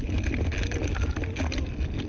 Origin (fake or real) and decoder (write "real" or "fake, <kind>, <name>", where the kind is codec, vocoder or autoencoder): real